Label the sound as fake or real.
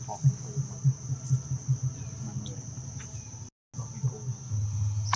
real